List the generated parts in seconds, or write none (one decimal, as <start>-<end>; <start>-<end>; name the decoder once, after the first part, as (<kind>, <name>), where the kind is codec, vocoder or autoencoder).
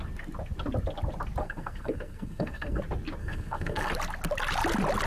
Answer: 1.4-2.8 (codec, SNAC); 3.2-3.9